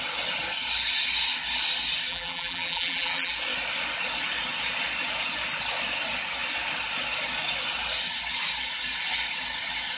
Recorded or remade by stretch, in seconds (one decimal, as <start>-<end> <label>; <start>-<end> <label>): 0.0-2.1 recorded; 2.1-3.3 remade; 3.3-10.0 recorded